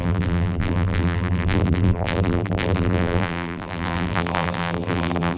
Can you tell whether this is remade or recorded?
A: remade